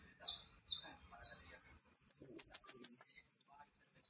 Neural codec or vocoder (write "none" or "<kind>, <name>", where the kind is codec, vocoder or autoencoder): none